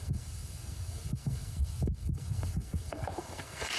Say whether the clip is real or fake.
fake